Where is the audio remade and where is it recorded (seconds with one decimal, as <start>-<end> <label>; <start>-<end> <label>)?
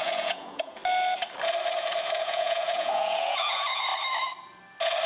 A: 0.0-0.8 remade; 0.8-2.2 recorded; 2.2-3.9 remade; 3.9-5.1 recorded